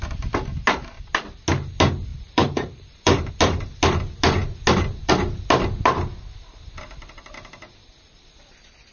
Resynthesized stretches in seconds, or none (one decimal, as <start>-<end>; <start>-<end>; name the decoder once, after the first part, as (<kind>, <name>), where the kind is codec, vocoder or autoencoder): 2.1-3.3 (vocoder, BigVGAN v2)